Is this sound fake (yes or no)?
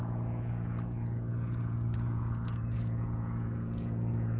yes